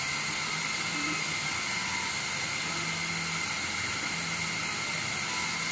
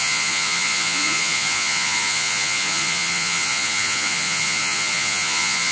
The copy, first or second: second